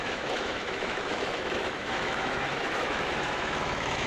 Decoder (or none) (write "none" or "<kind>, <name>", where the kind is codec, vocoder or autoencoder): autoencoder, DAC-VAE